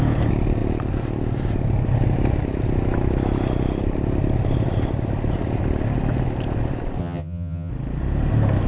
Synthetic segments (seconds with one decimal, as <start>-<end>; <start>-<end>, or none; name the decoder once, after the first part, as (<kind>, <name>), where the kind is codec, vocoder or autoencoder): 7.0-7.7 (vocoder, HiFi-GAN)